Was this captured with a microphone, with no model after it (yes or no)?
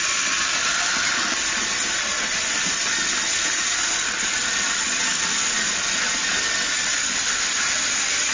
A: yes